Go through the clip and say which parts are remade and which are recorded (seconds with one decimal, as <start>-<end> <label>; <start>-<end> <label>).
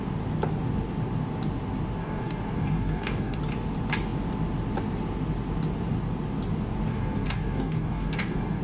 0.0-2.0 recorded; 2.0-3.4 remade; 3.4-6.9 recorded; 6.9-8.6 remade